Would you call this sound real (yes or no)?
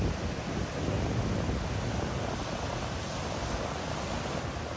yes